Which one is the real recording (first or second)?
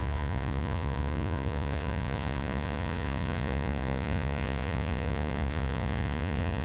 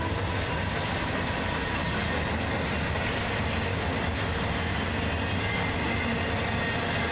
second